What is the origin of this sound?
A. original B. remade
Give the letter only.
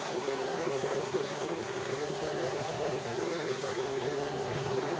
B